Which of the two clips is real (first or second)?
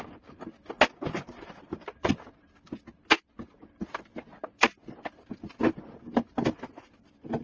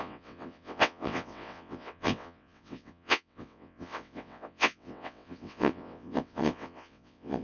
first